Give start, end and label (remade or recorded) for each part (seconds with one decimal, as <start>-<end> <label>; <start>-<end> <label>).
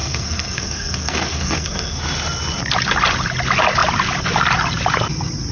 0.0-2.0 remade; 2.0-5.5 recorded